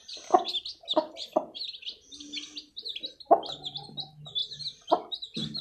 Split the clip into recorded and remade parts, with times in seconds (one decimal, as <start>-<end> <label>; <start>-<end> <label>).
0.0-5.6 recorded